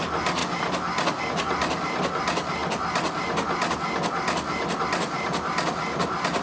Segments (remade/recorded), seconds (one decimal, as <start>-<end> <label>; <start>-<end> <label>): 0.0-6.4 recorded